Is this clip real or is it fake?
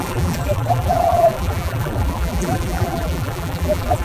fake